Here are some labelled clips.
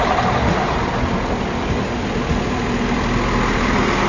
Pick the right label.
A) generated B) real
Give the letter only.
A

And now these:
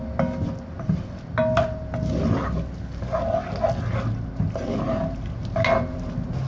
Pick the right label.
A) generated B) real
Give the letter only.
B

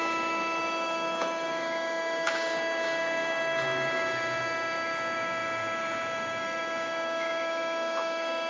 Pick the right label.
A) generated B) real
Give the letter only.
A